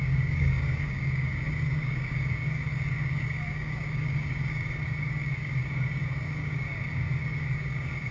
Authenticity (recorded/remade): remade